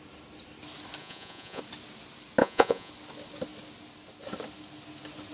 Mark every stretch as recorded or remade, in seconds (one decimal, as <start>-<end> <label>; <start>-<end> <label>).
0.0-1.0 recorded; 1.0-1.6 remade; 1.6-2.4 recorded; 2.4-2.9 remade; 2.9-5.3 recorded